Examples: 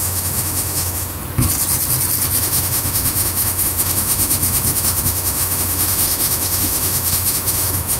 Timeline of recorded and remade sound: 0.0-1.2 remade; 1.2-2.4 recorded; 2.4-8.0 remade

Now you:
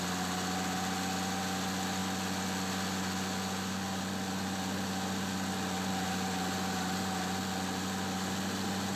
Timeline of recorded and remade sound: 0.0-9.0 recorded

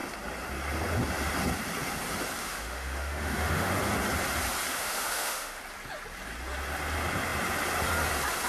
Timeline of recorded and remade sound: 0.0-2.4 recorded; 2.4-3.7 remade; 3.7-4.7 recorded; 4.7-5.6 remade; 5.6-8.5 recorded

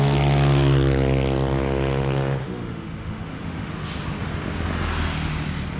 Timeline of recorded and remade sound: 0.0-2.4 recorded; 2.4-3.7 remade; 3.7-5.8 recorded